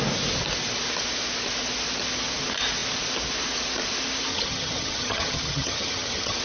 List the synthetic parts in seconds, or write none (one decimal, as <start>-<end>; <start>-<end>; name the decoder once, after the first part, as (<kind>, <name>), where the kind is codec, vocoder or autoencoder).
4.3-6.4 (vocoder, HiFi-GAN)